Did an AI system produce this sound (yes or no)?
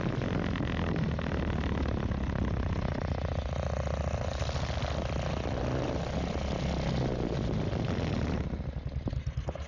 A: no